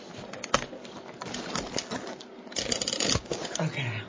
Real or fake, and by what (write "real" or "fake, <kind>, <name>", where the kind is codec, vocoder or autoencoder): real